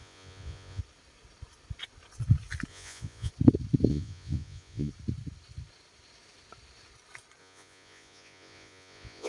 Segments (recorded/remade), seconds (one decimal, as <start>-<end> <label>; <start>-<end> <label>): 0.0-0.8 remade; 0.8-2.7 recorded; 2.7-3.3 remade; 3.3-3.9 recorded; 3.9-4.9 remade; 4.9-7.4 recorded; 7.4-9.3 remade